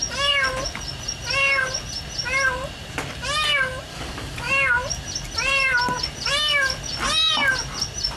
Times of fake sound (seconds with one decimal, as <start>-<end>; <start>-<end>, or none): 3.9-4.5